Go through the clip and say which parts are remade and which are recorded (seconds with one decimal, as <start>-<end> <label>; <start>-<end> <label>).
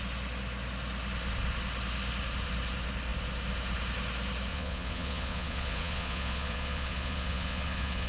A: 0.0-4.5 recorded; 4.5-8.1 remade